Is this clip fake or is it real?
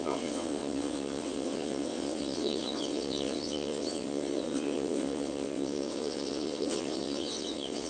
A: fake